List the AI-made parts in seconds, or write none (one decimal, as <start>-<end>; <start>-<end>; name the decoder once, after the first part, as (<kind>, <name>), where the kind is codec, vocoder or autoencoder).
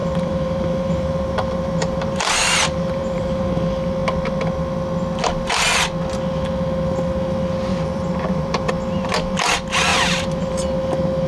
0.0-3.5 (vocoder, BigVGAN v2); 7.7-8.7; 9.9-10.5